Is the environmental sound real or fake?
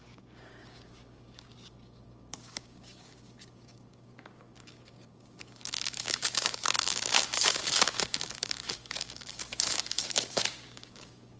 fake